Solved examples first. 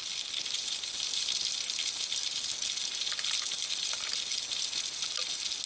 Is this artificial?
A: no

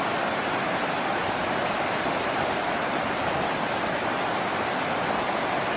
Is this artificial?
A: no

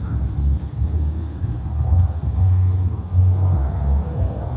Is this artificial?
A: yes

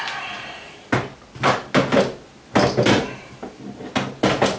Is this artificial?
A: no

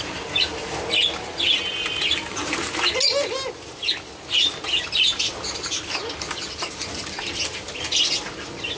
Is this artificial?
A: no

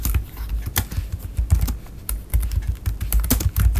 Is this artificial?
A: no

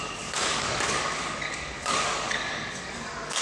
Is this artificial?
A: yes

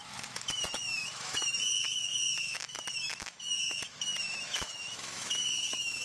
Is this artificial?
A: yes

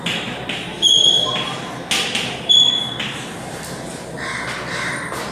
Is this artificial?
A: no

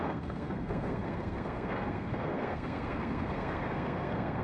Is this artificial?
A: yes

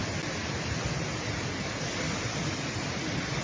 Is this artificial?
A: no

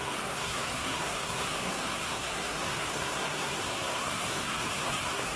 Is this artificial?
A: yes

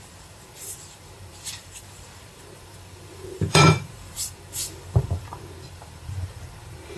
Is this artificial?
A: yes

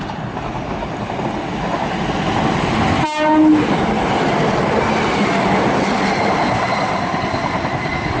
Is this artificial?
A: no